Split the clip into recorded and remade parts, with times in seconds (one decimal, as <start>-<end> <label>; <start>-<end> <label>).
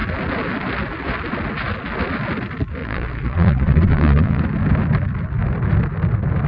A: 0.0-2.8 recorded; 2.8-4.4 remade; 4.4-6.5 recorded